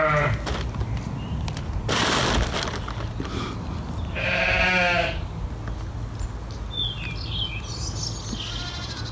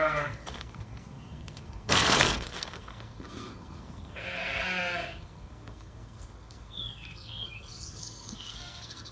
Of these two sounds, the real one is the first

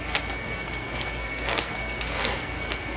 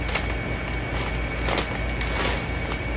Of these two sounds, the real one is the second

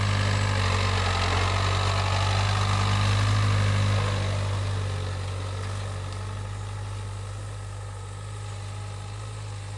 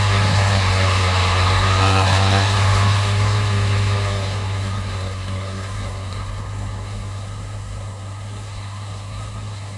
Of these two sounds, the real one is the first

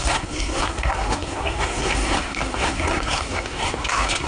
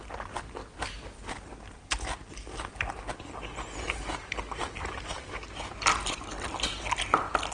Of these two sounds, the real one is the second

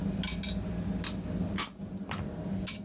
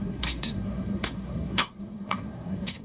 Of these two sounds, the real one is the first